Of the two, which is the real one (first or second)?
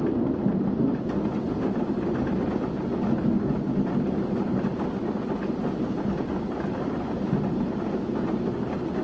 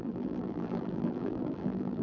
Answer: first